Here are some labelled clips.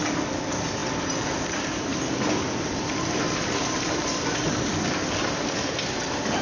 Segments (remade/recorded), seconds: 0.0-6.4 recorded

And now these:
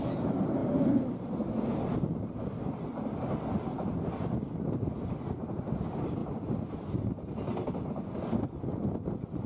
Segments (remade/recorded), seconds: 0.0-9.5 recorded

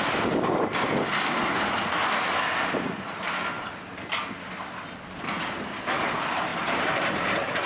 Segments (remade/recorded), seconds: 0.0-6.5 recorded; 6.5-7.7 remade